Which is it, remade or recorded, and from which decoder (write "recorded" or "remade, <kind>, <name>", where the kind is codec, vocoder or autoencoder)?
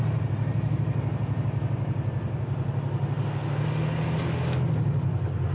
recorded